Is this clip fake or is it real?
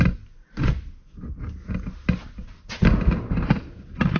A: real